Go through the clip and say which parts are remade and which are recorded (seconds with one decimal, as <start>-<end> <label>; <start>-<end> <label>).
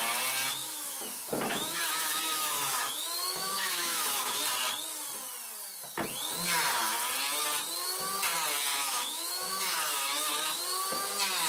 0.0-0.6 recorded; 0.6-4.4 remade; 4.4-8.7 recorded; 8.7-10.6 remade; 10.6-11.5 recorded